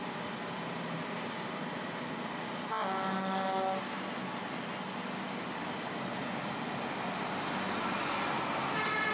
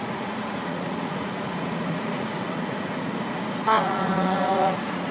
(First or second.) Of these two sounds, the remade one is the second